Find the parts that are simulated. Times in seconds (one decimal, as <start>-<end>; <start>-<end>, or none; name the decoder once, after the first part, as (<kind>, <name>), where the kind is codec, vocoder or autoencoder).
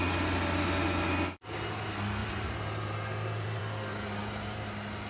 2.2-3.6 (vocoder, BigVGAN v2)